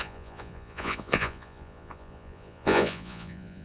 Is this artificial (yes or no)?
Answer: yes